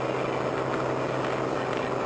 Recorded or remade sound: recorded